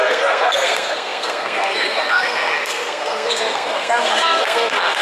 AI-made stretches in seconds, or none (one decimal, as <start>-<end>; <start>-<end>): 0.0-5.0